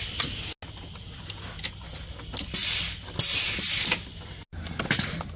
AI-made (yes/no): no